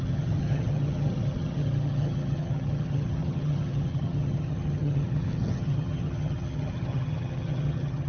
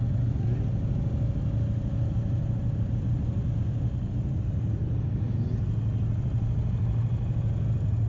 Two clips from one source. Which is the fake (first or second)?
first